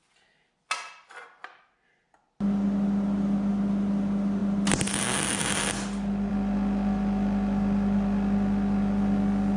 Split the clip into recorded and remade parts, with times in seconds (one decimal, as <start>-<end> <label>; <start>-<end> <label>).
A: 0.0-9.6 recorded